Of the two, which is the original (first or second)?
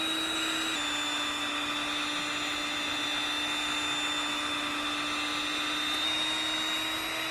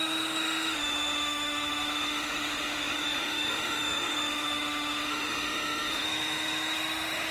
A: first